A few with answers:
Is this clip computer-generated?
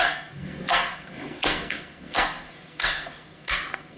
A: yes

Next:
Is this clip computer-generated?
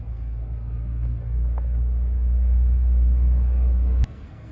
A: yes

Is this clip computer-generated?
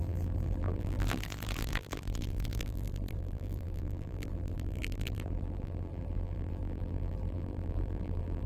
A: yes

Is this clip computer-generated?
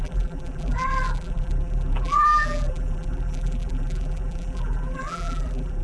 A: yes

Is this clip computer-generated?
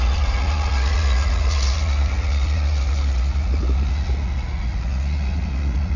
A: yes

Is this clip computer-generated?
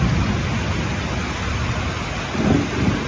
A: no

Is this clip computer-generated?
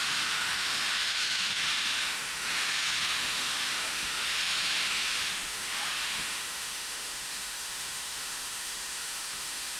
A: yes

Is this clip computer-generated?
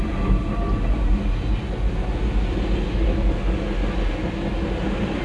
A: no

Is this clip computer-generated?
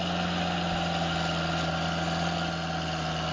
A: no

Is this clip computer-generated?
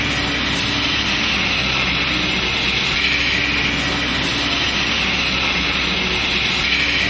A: no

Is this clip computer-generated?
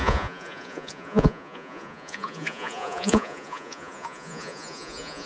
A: yes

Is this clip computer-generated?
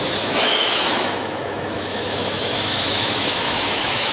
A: yes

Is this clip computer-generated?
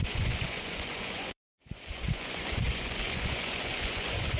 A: yes